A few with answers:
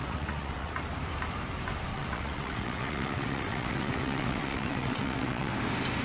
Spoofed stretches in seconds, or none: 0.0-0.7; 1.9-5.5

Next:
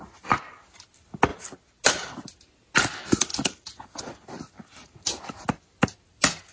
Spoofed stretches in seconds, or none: none

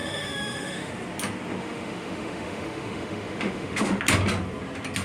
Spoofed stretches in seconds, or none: 0.0-0.9; 1.6-4.0

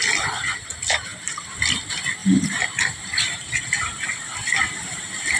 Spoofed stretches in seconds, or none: 1.1-1.6; 2.2-5.4

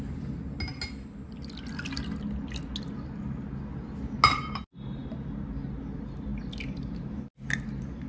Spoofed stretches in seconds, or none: none

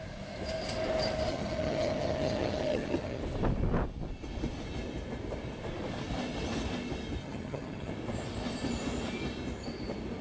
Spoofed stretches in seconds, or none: 1.3-3.2; 7.2-7.9